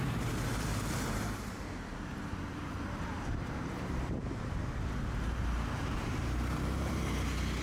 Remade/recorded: remade